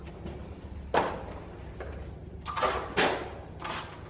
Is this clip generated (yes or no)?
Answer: no